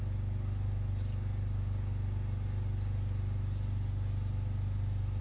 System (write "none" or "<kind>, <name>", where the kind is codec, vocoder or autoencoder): none